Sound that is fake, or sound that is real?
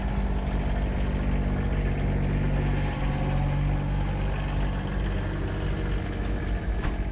real